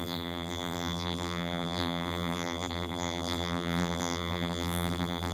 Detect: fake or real fake